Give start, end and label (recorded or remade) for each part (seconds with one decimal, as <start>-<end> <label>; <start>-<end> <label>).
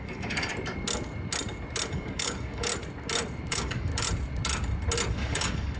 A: 0.0-0.5 remade; 0.5-1.9 recorded; 1.9-2.7 remade; 2.7-3.5 recorded; 3.5-3.9 remade; 3.9-5.1 recorded; 5.1-5.8 remade